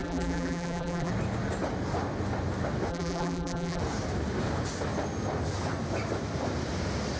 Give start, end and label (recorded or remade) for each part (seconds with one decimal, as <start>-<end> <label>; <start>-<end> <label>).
0.0-1.1 remade; 1.1-2.9 recorded; 2.9-3.8 remade; 3.8-7.2 recorded